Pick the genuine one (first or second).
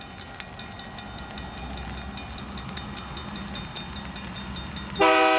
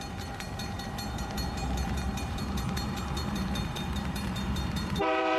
first